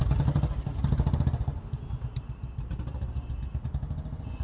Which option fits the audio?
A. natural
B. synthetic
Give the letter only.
A